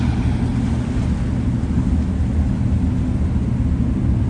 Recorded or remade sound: recorded